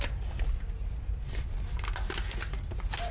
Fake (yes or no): no